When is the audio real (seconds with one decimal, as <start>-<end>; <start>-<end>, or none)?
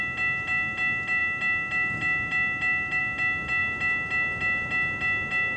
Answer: 0.0-5.6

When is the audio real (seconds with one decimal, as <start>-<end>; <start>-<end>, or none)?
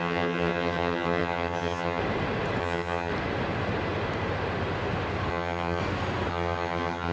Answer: 2.0-2.6; 3.1-5.3; 5.8-6.3